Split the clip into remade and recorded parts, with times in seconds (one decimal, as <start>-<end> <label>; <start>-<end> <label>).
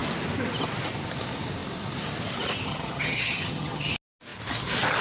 0.0-2.7 recorded; 2.7-3.9 remade; 3.9-5.0 recorded